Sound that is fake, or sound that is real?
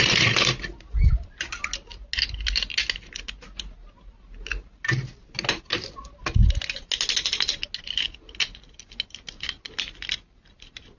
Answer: real